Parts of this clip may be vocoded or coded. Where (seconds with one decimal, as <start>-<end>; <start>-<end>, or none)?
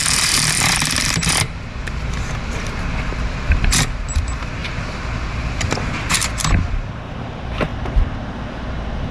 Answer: 0.0-9.1